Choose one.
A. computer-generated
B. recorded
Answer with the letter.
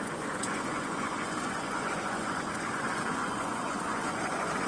A